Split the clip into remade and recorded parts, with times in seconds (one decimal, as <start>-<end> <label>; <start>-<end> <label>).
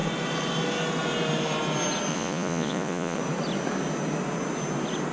0.0-2.1 recorded; 2.1-3.2 remade; 3.2-5.1 recorded